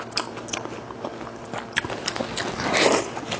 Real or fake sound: real